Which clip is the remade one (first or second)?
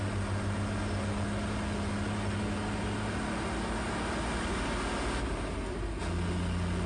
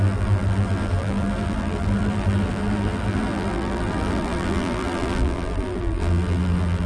second